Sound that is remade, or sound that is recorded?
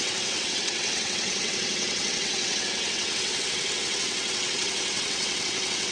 remade